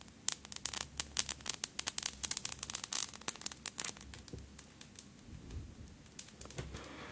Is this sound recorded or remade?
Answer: recorded